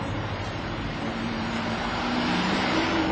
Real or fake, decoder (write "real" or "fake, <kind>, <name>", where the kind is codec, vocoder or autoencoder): fake, vocoder, BigVGAN v2